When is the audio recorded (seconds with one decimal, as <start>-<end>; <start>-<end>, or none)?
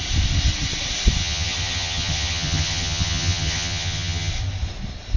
0.0-1.2; 4.3-5.2